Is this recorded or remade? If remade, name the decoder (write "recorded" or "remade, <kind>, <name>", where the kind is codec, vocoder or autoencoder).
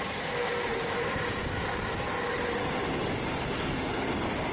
remade, vocoder, BigVGAN v2